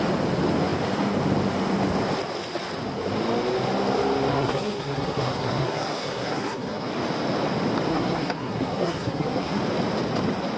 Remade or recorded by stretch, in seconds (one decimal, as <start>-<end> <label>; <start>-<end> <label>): 0.0-4.3 recorded; 4.3-6.9 remade; 6.9-7.9 recorded; 7.9-9.6 remade; 9.6-10.6 recorded